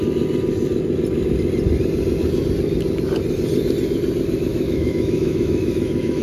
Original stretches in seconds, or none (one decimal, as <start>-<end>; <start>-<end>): 0.0-4.5